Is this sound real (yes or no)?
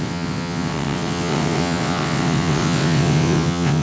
no